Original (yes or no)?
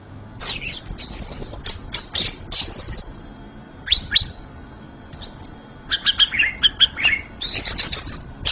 yes